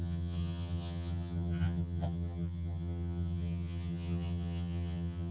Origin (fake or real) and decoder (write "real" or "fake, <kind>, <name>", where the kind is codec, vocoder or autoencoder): fake, vocoder, HiFi-GAN